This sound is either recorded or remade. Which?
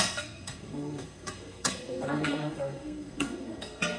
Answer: remade